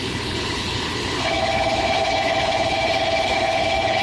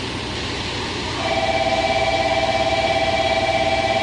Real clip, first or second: second